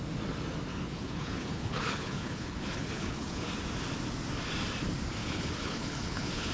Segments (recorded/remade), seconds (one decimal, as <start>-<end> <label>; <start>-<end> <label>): 0.0-0.7 recorded; 0.7-3.5 remade; 3.5-5.2 recorded; 5.2-6.5 remade